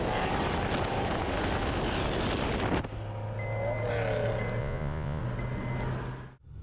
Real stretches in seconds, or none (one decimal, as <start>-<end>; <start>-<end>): 0.0-4.6; 5.2-6.6